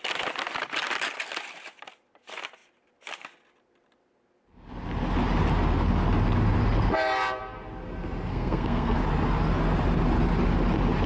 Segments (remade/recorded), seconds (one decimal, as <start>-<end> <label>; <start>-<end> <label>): 0.0-8.3 recorded; 8.3-9.0 remade; 9.0-11.1 recorded